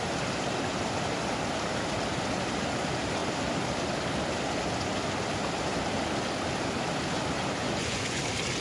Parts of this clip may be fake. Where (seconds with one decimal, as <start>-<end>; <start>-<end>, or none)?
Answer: 7.6-8.2

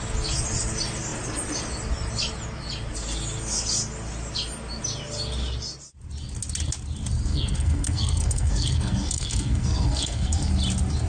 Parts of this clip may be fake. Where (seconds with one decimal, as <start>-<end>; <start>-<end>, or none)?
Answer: 7.3-10.5

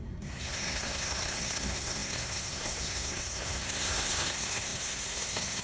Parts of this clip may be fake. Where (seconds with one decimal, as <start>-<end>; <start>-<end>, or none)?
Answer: 0.0-5.6

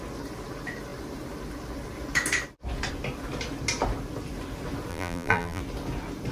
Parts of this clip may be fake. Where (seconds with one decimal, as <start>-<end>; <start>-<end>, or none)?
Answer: 4.9-5.6

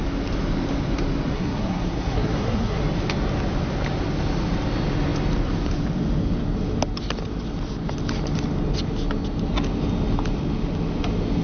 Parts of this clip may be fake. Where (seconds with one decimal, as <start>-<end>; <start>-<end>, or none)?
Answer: 1.3-2.8

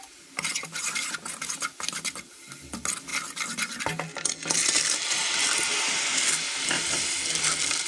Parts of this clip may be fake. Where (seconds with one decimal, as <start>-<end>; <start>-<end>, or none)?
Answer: none

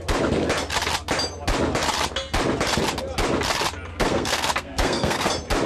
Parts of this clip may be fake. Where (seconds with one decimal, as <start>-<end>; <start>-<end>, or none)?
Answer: 3.9-5.3